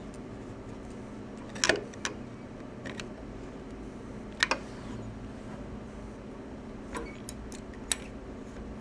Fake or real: real